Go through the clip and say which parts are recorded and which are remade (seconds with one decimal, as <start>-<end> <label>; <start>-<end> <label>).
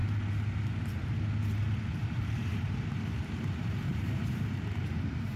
0.0-1.9 recorded; 1.9-5.4 remade